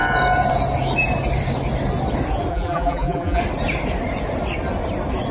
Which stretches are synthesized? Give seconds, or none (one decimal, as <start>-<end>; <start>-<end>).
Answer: 2.5-3.4